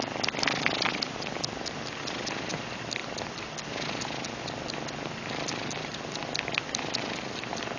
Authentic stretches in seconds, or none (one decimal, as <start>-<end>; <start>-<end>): 0.0-7.8